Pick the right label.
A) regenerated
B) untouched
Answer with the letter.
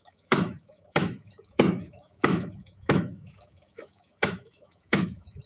A